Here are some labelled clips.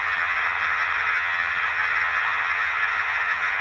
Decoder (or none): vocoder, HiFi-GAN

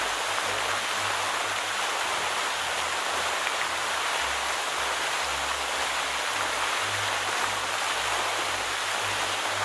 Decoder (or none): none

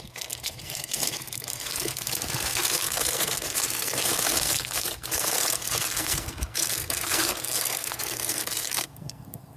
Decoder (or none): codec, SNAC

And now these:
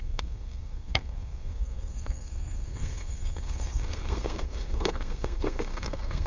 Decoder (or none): codec, SNAC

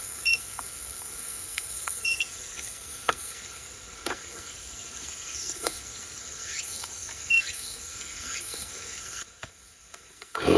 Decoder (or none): codec, SNAC